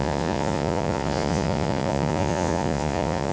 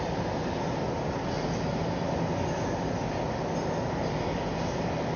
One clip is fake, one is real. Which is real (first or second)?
second